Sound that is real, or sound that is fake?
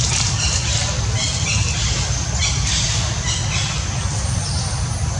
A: real